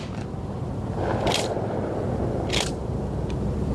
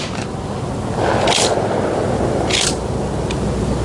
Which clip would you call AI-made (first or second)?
first